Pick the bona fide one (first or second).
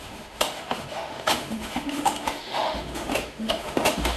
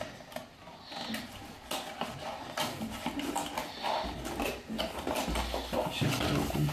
second